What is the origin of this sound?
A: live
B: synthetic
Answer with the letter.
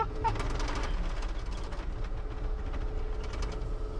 A